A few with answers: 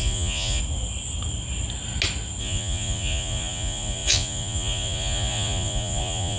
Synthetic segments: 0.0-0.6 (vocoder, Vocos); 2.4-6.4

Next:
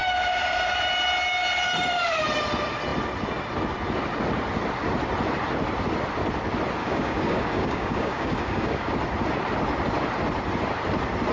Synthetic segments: 6.8-8.9 (codec, DAC)

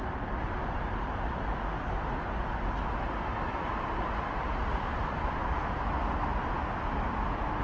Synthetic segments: 5.4-6.0 (autoencoder, DAC-VAE)

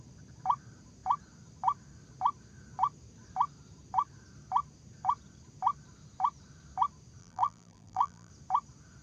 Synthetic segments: 7.2-8.3 (vocoder, BigVGAN v2)

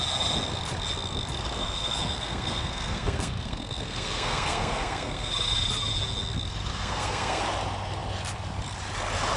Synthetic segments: 1.6-5.3 (codec, SNAC); 6.7-7.4

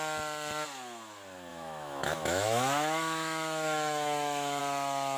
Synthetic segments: 1.5-4.6 (autoencoder, DAC-VAE)